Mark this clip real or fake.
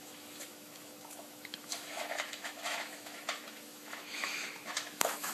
fake